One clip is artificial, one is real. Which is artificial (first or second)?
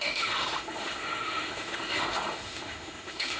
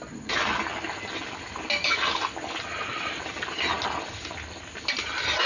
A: first